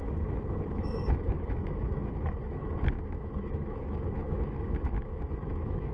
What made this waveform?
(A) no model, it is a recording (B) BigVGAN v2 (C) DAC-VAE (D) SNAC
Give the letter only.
C